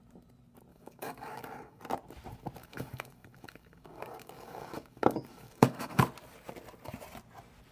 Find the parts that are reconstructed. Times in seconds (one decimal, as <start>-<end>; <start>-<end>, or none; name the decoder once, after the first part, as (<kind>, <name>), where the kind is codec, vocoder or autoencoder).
0.7-1.8 (codec, DAC); 2.6-6.0